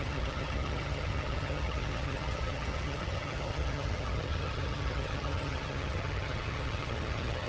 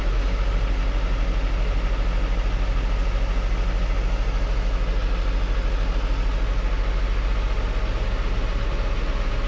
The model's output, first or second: first